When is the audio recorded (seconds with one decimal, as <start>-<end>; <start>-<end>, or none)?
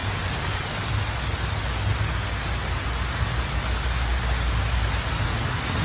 0.9-5.8